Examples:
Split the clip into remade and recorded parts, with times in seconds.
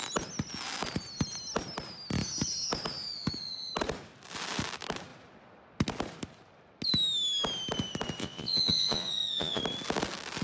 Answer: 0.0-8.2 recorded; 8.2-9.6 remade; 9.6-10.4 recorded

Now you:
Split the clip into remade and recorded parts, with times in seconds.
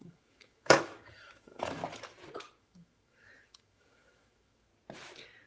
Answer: 0.0-1.8 remade; 1.8-2.6 recorded; 2.6-4.7 remade; 4.7-5.5 recorded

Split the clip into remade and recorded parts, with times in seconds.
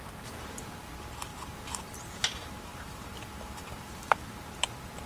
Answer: 0.0-1.3 recorded; 1.3-4.4 remade; 4.4-5.1 recorded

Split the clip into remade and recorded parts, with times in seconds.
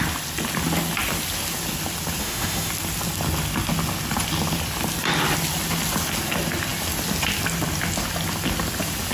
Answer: 0.0-2.2 recorded; 2.2-2.7 remade; 2.7-9.1 recorded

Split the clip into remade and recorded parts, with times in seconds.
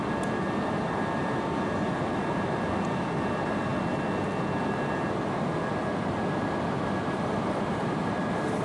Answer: 0.0-8.6 recorded